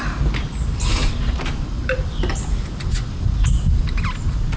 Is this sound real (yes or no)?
yes